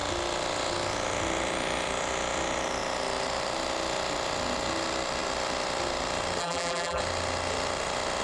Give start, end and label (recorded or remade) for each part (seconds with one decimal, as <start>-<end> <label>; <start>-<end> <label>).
0.0-6.4 recorded; 6.4-7.0 remade; 7.0-8.2 recorded